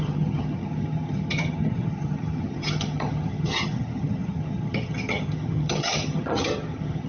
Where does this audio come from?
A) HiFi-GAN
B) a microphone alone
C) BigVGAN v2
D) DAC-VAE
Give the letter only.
A